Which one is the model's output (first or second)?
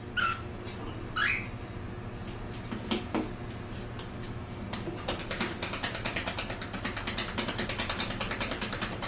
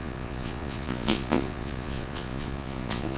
second